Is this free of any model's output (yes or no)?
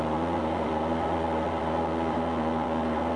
no